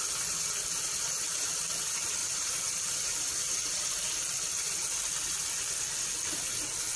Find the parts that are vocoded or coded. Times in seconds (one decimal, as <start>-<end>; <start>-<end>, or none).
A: 2.2-3.8